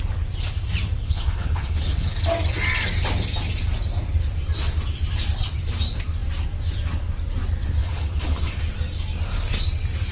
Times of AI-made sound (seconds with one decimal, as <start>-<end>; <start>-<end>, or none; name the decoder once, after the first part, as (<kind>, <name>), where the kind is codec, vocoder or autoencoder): 1.0-2.2 (codec, HILCodec); 7.8-8.6